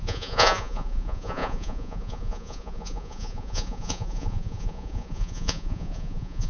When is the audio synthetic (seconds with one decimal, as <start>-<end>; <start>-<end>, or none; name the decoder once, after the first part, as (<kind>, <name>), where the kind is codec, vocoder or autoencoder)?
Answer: 0.0-6.5 (vocoder, Vocos)